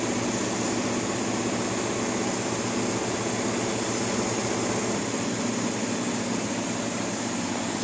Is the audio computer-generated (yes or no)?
no